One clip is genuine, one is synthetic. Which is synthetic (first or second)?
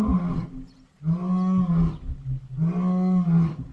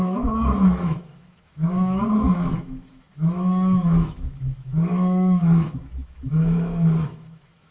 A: second